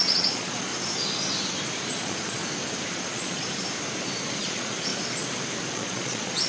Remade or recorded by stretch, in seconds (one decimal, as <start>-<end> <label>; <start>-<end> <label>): 0.0-0.7 remade; 0.7-1.9 recorded; 1.9-2.4 remade; 2.4-2.9 recorded; 2.9-3.4 remade; 3.4-4.4 recorded; 4.4-4.9 remade; 4.9-5.7 recorded; 5.7-6.5 remade